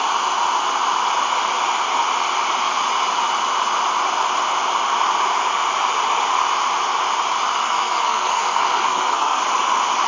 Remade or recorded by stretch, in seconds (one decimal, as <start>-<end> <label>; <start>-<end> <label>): 0.0-7.6 recorded; 7.6-9.4 remade; 9.4-10.1 recorded